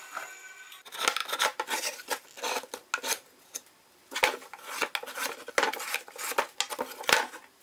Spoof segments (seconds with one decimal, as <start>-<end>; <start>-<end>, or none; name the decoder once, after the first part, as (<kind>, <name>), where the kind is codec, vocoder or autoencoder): none